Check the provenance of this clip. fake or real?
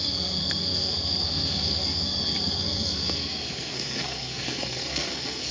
fake